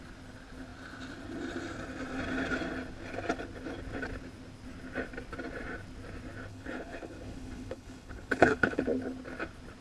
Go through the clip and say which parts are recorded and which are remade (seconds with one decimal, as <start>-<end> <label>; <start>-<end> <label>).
0.0-6.5 recorded; 6.5-8.8 remade; 8.8-9.8 recorded